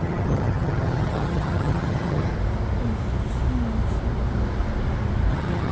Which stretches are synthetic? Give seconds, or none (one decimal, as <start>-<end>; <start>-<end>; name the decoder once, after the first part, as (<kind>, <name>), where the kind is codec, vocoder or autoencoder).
0.0-2.3 (vocoder, HiFi-GAN); 5.3-5.7